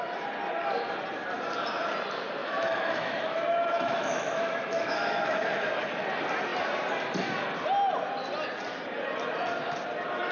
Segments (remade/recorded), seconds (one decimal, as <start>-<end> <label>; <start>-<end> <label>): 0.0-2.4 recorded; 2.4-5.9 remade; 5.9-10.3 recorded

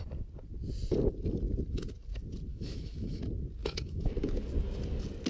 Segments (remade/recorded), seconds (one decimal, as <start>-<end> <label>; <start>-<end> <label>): 0.0-2.5 recorded; 2.5-3.2 remade; 3.2-3.6 recorded; 3.6-4.1 remade; 4.1-5.3 recorded

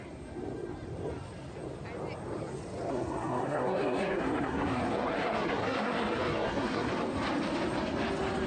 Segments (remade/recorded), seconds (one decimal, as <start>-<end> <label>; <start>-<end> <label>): 0.0-2.9 recorded; 2.9-6.9 remade; 6.9-8.5 recorded